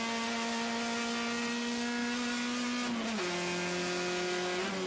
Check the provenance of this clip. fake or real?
real